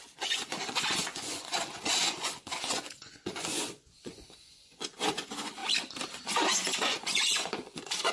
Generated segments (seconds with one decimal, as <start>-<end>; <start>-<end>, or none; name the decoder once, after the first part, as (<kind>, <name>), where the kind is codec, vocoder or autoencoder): 0.0-5.6 (vocoder, Vocos); 6.2-8.1